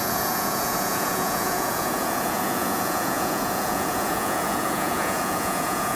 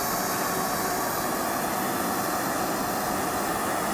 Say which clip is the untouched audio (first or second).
second